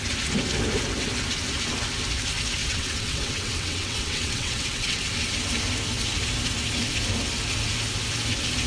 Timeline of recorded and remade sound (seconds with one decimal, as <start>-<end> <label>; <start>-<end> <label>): 0.0-2.6 recorded; 2.6-5.0 remade; 5.0-8.7 recorded